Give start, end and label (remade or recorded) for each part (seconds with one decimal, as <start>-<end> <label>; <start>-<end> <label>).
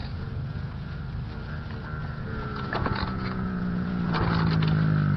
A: 0.0-1.0 remade; 1.0-2.0 recorded; 2.0-4.2 remade; 4.2-5.2 recorded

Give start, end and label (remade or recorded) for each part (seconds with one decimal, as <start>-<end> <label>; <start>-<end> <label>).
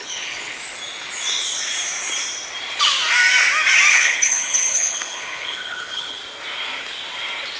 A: 0.0-0.6 remade; 0.6-3.9 recorded; 3.9-6.2 remade; 6.2-7.6 recorded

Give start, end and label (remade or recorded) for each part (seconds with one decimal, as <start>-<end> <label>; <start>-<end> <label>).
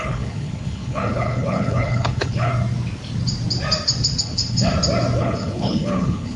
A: 0.0-2.5 remade; 2.5-4.2 recorded; 4.2-4.7 remade; 4.7-5.2 recorded; 5.2-6.4 remade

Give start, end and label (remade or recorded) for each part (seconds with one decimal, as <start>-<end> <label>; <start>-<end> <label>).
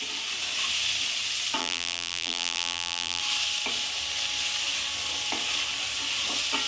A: 0.0-1.6 recorded; 1.6-3.2 remade; 3.2-6.7 recorded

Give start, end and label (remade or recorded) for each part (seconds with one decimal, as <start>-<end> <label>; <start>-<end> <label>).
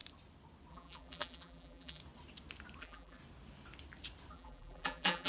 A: 0.0-0.7 recorded; 0.7-2.0 remade; 2.0-2.8 recorded; 2.8-3.2 remade; 3.2-4.3 recorded; 4.3-5.3 remade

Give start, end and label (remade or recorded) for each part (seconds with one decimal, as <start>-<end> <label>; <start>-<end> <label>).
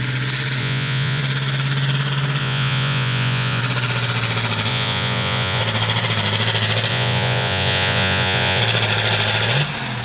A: 0.0-0.6 recorded; 0.6-1.2 remade; 1.2-2.4 recorded; 2.4-3.6 remade; 3.6-4.7 recorded; 4.7-5.6 remade; 5.6-6.9 recorded; 6.9-8.6 remade; 8.6-10.0 recorded